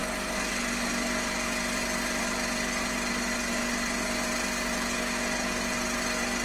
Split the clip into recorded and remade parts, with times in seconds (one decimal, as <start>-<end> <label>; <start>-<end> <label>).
0.0-0.5 remade; 0.5-6.4 recorded